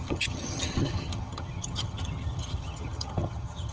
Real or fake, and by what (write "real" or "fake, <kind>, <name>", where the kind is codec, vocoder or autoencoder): fake, vocoder, HiFi-GAN